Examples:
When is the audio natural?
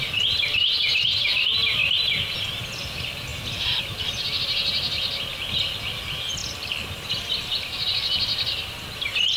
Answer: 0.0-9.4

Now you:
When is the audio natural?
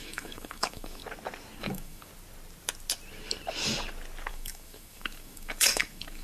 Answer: 1.0-1.6; 2.1-4.3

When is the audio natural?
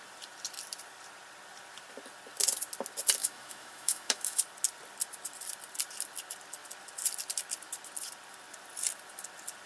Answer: 0.0-3.2; 4.4-9.7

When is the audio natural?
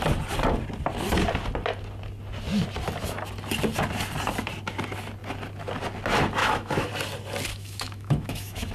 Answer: 0.0-6.4; 6.9-7.5